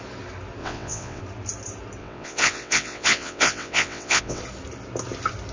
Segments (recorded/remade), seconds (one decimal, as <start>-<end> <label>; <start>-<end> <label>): 0.0-0.6 recorded; 0.6-1.2 remade; 1.2-2.0 recorded; 2.0-4.4 remade; 4.4-5.5 recorded